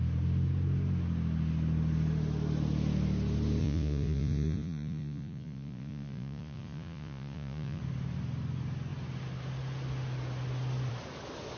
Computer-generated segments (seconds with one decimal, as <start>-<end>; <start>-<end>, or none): 3.6-7.8